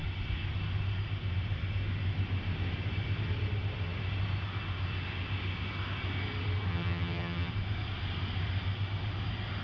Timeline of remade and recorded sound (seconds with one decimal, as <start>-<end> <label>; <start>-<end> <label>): 0.0-6.7 recorded; 6.7-7.5 remade; 7.5-9.6 recorded